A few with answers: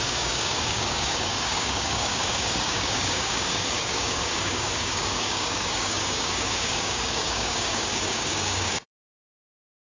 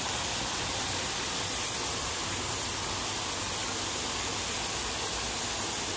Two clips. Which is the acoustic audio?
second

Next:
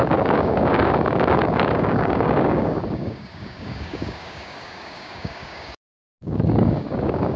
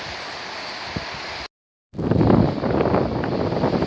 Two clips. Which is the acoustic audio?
second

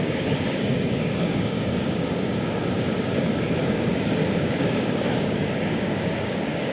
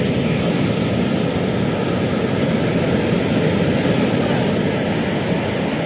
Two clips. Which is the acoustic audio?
second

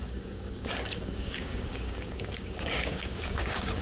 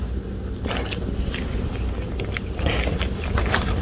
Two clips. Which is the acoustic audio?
second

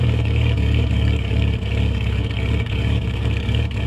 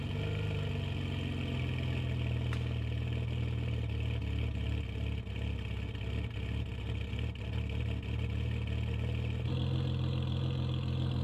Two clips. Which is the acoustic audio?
second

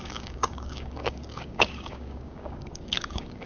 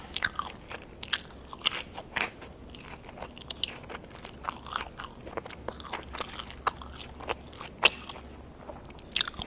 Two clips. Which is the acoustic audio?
second